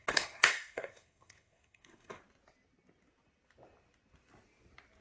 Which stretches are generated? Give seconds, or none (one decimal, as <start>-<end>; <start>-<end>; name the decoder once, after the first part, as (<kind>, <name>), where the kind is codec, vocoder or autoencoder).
0.0-2.2 (codec, SNAC)